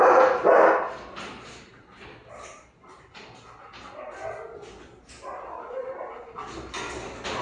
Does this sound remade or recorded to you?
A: recorded